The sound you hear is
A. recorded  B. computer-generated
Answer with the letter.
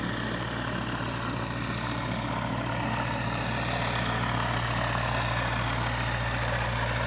A